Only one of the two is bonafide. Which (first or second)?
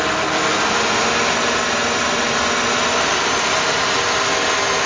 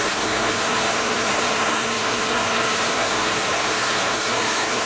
first